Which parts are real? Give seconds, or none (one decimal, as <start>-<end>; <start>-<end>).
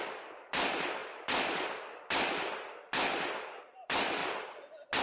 4.2-5.0